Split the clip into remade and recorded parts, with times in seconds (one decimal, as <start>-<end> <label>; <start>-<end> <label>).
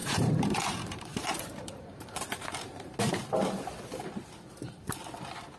0.0-3.0 remade; 3.0-5.6 recorded